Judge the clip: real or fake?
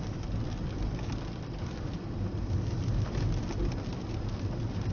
real